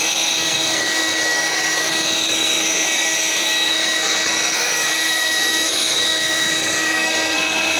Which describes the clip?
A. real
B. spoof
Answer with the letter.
B